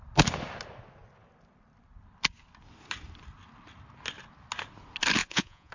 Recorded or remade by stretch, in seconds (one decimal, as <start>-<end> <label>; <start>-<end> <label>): 0.0-5.2 recorded; 5.2-5.7 remade